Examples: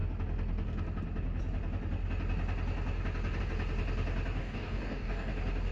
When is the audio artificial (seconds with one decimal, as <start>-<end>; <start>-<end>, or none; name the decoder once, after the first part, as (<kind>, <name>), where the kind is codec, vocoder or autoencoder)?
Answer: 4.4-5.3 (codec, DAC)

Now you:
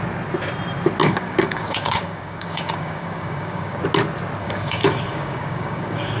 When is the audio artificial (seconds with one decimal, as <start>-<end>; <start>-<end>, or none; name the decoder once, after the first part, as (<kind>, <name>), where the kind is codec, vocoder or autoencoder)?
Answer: 1.0-3.8 (codec, DAC); 4.4-6.2

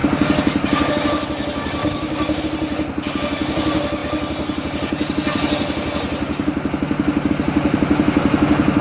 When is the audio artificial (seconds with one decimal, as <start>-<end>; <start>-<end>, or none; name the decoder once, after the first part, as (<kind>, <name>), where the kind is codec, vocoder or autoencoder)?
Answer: 1.8-2.4 (codec, DAC)

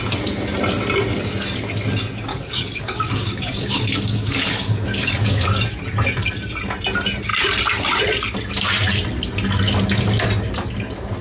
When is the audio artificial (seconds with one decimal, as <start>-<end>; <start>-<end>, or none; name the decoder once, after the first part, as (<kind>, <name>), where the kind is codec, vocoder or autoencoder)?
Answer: 2.3-5.5 (codec, DAC)

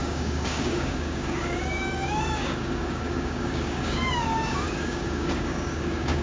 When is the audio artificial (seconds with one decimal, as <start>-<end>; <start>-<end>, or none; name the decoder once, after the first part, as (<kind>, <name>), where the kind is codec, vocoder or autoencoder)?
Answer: 0.0-6.2 (codec, DAC)